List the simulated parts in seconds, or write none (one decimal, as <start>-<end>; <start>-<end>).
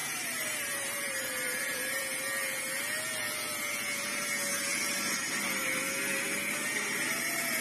0.0-2.0; 4.5-5.8